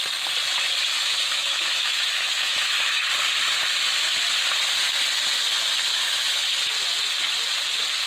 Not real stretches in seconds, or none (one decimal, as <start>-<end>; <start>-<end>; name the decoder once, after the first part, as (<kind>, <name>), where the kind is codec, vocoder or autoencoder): 1.0-3.0 (autoencoder, DAC-VAE); 5.9-6.6